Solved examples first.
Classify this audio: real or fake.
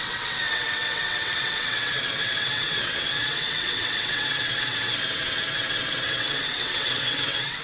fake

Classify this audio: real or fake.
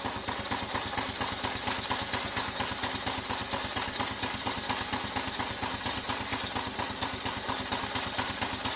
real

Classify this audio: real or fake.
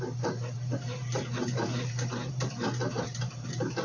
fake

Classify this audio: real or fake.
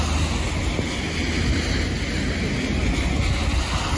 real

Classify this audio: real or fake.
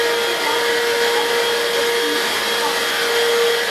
real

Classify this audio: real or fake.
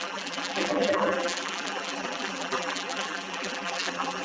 fake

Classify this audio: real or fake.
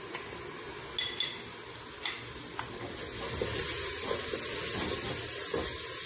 real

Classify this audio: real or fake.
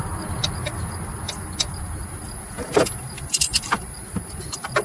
real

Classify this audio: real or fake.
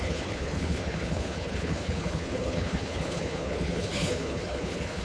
fake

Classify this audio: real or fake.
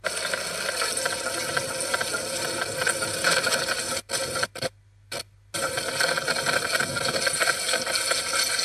real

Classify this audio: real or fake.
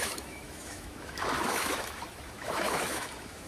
fake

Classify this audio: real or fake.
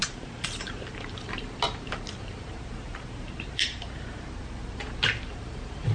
fake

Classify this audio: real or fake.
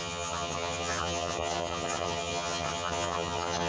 fake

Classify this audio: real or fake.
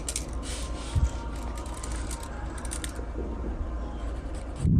real